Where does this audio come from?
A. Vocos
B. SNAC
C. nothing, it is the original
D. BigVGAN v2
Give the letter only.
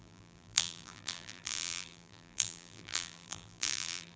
D